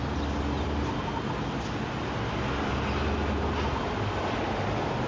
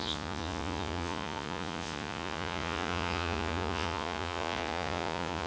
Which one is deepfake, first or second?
second